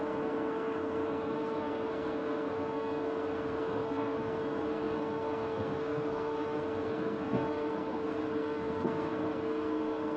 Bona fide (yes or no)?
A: no